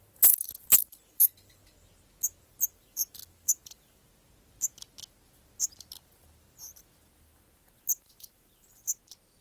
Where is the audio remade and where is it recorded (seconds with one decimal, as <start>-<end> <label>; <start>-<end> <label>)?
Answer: 0.0-1.6 remade; 1.6-2.4 recorded; 2.4-4.0 remade; 4.0-7.8 recorded; 7.8-8.8 remade; 8.8-9.4 recorded